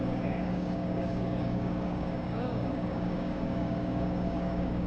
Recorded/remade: remade